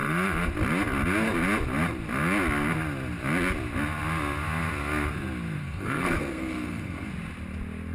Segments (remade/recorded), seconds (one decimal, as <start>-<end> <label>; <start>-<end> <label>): 0.0-5.6 recorded; 5.6-7.1 remade; 7.1-7.9 recorded